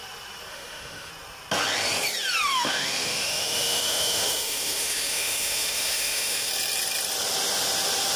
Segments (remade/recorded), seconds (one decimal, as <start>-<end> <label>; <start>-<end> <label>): 0.0-0.5 recorded; 0.5-1.1 remade; 1.1-2.5 recorded; 2.5-6.5 remade; 6.5-8.2 recorded